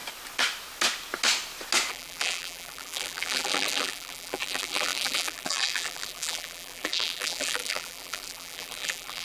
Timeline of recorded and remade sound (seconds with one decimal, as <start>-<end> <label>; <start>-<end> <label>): 0.0-1.9 recorded; 1.9-9.2 remade